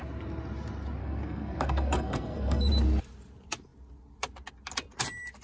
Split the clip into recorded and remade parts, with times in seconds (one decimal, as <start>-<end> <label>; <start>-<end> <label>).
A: 0.0-1.0 recorded; 1.0-2.7 remade; 2.7-5.4 recorded